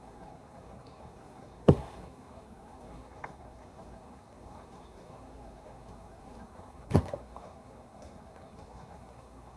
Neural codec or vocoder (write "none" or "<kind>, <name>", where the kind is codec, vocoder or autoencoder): codec, SNAC